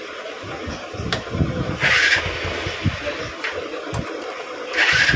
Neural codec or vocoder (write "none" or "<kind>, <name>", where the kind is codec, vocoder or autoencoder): none